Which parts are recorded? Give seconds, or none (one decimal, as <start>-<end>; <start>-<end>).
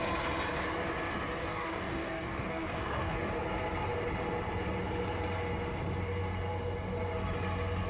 0.0-1.4; 3.3-7.9